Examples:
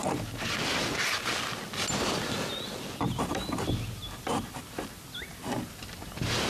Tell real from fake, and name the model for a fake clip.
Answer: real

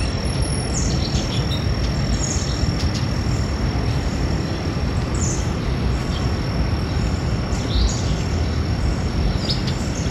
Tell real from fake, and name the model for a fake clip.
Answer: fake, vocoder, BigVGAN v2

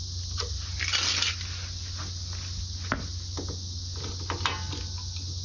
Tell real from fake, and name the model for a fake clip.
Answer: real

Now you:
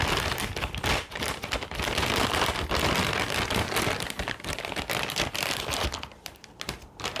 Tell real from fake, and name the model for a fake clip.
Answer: real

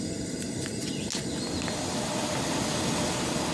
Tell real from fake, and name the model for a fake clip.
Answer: real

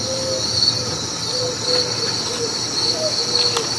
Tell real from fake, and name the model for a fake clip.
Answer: real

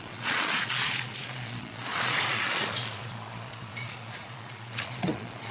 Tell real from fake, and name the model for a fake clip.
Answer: fake, vocoder, Vocos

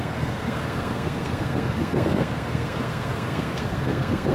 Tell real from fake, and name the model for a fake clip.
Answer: fake, codec, SNAC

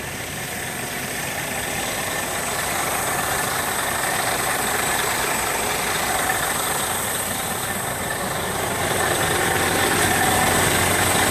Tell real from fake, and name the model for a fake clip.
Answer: real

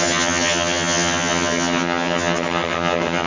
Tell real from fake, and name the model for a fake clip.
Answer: fake, vocoder, HiFi-GAN